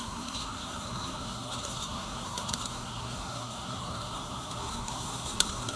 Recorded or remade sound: remade